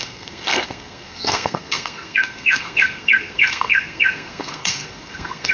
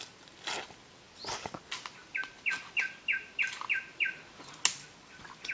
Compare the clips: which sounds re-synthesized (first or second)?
first